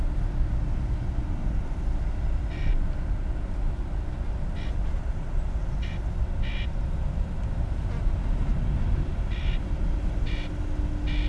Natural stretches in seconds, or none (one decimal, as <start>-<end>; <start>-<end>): 0.0-11.3